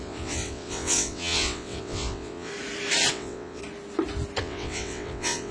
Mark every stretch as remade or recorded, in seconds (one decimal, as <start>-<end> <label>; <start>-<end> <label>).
0.0-2.5 remade; 2.5-3.1 recorded; 3.1-3.6 remade; 3.6-4.4 recorded; 4.4-5.5 remade